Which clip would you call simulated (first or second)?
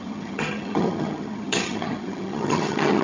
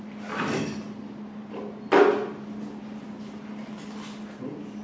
first